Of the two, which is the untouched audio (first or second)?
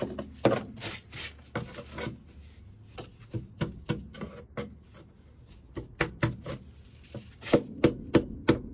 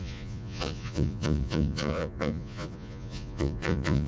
first